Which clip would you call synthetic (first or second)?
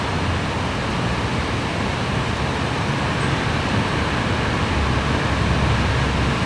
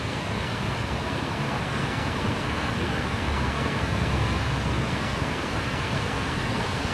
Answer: second